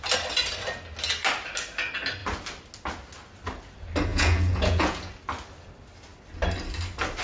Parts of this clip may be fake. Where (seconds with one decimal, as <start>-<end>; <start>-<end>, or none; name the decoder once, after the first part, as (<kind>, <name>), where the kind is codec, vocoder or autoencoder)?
4.1-5.1 (vocoder, Vocos)

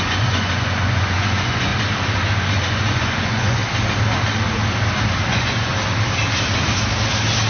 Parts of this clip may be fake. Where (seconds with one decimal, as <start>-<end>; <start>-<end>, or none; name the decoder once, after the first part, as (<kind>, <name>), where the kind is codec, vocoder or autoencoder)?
0.0-1.7 (vocoder, Vocos); 2.5-3.6; 5.3-5.7

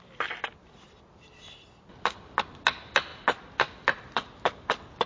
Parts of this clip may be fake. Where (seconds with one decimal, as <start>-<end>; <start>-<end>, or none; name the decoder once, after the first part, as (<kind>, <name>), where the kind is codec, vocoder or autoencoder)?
none

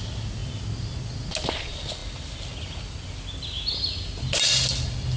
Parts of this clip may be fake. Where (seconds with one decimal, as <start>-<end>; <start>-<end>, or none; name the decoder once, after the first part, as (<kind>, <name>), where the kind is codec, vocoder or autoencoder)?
none

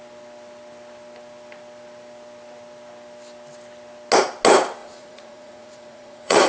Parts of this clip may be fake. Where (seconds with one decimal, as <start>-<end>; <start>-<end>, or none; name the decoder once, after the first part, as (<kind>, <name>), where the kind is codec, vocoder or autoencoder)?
4.8-6.5 (vocoder, Vocos)

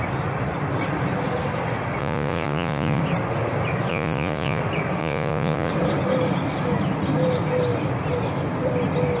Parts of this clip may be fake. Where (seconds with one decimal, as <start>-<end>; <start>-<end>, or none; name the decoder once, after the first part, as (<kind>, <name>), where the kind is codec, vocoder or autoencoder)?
2.0-3.0 (vocoder, Vocos); 3.9-4.6; 5.0-5.7